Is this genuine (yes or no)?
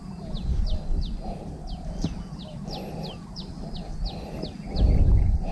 yes